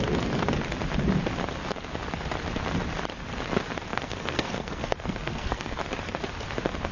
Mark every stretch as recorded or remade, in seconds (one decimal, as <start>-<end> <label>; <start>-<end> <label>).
0.0-3.9 recorded; 3.9-5.8 remade; 5.8-6.9 recorded